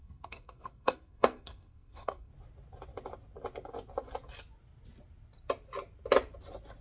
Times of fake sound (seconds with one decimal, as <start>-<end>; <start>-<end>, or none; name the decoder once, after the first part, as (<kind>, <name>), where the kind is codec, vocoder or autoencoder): 0.0-2.3 (codec, SNAC)